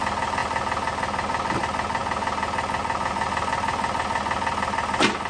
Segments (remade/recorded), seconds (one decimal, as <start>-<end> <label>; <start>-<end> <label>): 0.0-5.3 recorded